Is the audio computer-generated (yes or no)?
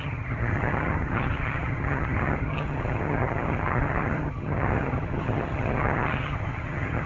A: yes